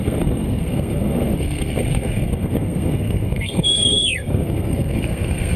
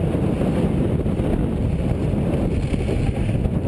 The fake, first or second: first